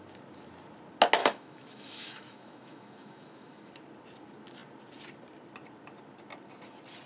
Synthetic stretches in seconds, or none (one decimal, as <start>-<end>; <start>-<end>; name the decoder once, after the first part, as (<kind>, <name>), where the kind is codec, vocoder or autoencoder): 1.2-3.7 (autoencoder, DAC-VAE)